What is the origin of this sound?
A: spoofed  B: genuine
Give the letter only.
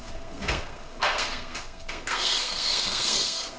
A